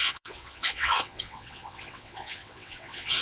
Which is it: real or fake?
fake